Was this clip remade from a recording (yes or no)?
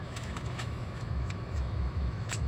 yes